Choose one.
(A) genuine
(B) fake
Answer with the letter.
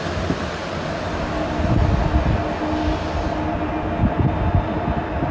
A